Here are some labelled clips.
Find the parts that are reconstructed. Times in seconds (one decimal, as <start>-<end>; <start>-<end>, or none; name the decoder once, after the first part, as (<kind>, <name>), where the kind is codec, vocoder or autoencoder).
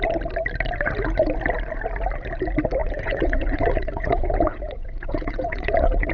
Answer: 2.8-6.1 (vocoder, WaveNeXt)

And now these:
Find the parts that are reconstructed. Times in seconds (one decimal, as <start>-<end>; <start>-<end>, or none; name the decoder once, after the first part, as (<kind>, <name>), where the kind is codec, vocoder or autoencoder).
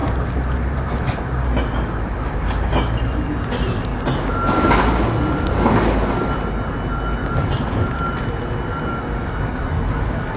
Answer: 7.2-8.3 (vocoder, BigVGAN v2)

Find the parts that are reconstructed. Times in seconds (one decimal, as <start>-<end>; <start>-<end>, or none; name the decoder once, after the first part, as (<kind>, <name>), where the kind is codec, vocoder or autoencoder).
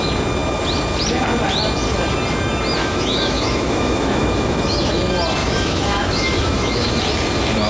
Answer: 2.8-4.9 (autoencoder, DAC-VAE); 5.4-6.9